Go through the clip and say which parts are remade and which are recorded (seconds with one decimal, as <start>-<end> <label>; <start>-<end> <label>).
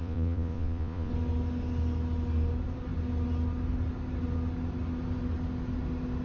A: 0.0-1.1 remade; 1.1-6.2 recorded